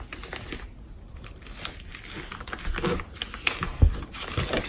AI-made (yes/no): no